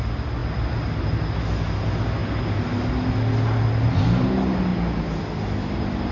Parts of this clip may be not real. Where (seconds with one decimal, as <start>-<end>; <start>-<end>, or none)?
none